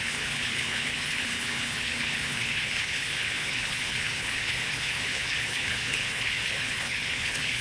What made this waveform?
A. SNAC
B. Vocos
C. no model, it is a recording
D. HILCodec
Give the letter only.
D